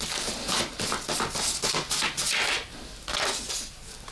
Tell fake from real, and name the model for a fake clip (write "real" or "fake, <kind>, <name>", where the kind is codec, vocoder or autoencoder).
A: real